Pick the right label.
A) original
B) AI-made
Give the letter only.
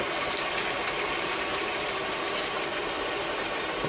B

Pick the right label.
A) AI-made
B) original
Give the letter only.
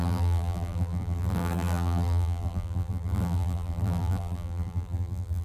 A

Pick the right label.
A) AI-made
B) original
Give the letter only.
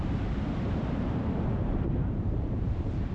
A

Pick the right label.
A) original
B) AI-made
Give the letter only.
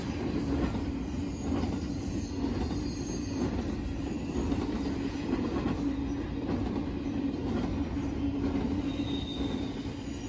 A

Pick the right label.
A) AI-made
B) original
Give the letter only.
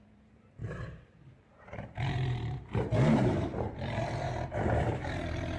A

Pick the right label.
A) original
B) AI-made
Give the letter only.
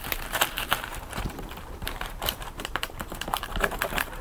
B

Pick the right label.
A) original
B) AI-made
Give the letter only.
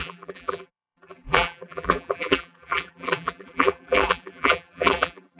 B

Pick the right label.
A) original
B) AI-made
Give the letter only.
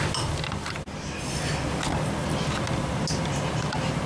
A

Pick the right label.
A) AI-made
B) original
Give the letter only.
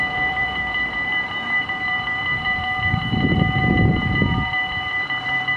A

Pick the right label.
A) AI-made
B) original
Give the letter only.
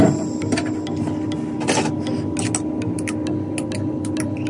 B